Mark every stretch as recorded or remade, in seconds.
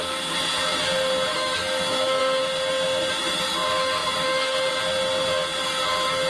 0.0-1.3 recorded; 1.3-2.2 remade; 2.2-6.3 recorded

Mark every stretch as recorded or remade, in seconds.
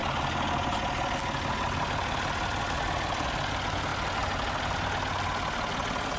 0.0-6.2 recorded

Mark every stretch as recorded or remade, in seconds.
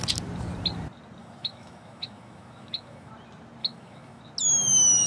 0.0-1.2 recorded; 1.2-3.1 remade; 3.1-3.6 recorded; 3.6-4.2 remade; 4.2-5.1 recorded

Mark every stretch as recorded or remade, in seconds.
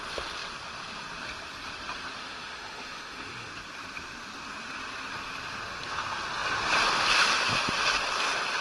0.0-2.2 recorded; 2.2-3.5 remade; 3.5-8.6 recorded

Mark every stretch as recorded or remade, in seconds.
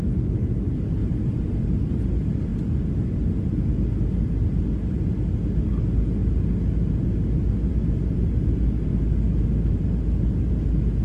0.0-11.0 recorded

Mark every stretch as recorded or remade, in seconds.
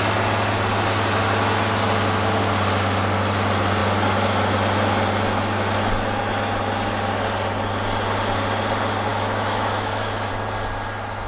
0.0-9.1 recorded; 9.1-10.3 remade; 10.3-11.3 recorded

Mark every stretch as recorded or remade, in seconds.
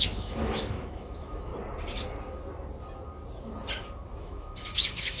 0.0-1.5 remade; 1.5-4.2 recorded; 4.2-5.2 remade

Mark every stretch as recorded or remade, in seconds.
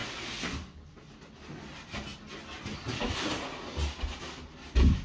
0.0-5.0 recorded